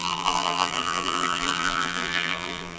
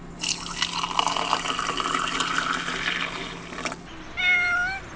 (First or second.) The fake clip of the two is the first